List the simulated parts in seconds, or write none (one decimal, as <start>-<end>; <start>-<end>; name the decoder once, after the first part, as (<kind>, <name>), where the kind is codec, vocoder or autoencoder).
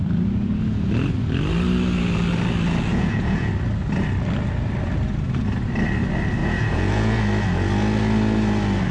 2.9-3.5 (vocoder, Vocos); 6.4-7.2